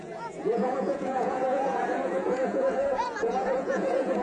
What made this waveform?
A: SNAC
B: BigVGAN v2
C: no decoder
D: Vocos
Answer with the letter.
D